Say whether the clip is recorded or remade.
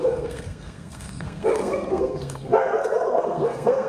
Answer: remade